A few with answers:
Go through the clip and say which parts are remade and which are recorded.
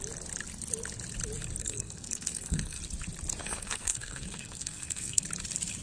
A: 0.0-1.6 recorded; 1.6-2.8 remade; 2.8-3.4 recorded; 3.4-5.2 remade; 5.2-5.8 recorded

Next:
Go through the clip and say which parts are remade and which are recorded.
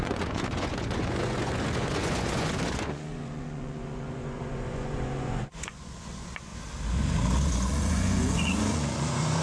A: 0.0-6.5 remade; 6.5-7.5 recorded; 7.5-9.4 remade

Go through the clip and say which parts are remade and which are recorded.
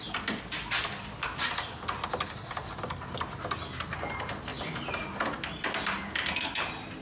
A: 0.0-7.0 recorded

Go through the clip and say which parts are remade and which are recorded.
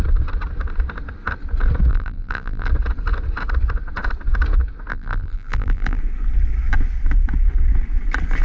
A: 0.0-1.9 recorded; 1.9-2.7 remade; 2.7-4.9 recorded; 4.9-6.0 remade; 6.0-8.4 recorded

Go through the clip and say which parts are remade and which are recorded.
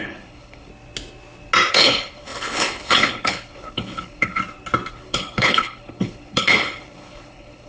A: 0.0-0.7 remade; 0.7-1.7 recorded; 1.7-4.4 remade; 4.4-4.9 recorded; 4.9-7.7 remade